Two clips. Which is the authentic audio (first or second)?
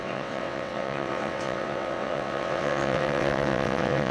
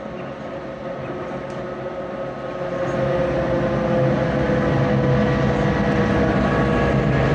second